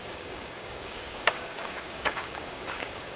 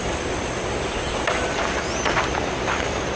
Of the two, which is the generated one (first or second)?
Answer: first